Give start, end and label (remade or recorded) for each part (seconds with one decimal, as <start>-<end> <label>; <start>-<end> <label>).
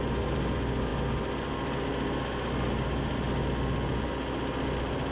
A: 0.0-5.1 recorded